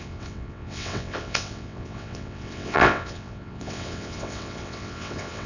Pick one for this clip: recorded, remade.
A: remade